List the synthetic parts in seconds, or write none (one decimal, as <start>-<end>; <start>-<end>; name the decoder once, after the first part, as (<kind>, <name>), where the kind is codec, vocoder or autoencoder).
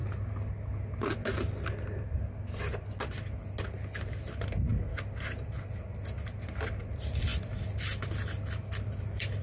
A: none